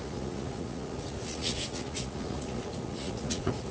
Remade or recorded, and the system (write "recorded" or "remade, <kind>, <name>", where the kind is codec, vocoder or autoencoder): remade, vocoder, Vocos